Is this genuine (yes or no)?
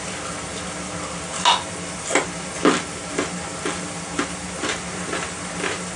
yes